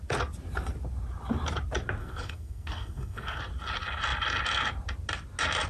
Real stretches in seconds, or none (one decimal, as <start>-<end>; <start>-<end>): 0.0-2.0; 3.4-5.7